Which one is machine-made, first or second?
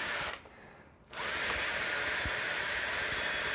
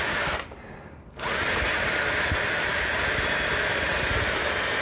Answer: second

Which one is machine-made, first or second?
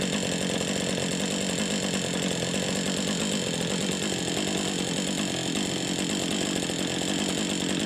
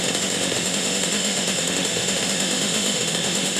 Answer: second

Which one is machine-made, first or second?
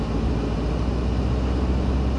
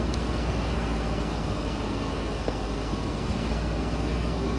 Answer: second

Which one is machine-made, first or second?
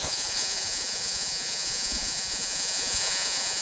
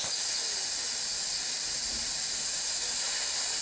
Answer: first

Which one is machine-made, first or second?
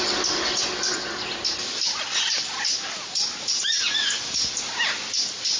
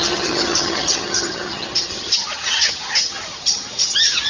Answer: second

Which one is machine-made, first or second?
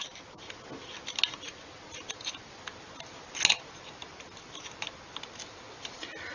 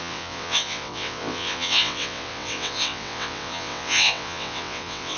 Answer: second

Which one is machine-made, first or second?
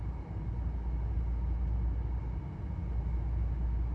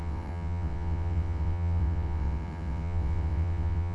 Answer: second